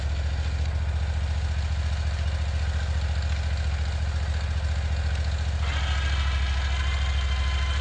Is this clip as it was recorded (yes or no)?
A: yes